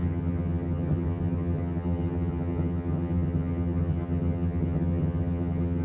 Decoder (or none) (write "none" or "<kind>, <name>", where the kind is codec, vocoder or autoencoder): vocoder, HiFi-GAN